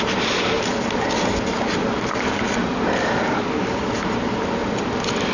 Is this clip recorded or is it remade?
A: recorded